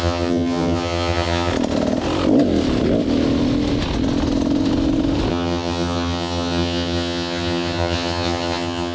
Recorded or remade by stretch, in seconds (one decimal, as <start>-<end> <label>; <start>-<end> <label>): 0.0-1.5 remade; 1.5-5.3 recorded; 5.3-8.9 remade